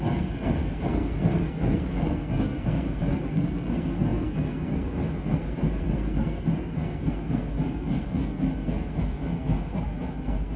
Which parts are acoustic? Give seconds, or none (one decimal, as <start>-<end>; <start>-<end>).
none